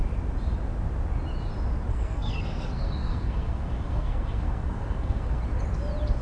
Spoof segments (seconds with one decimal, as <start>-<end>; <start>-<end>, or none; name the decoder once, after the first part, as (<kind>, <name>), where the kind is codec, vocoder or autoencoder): 1.9-5.4 (codec, SNAC)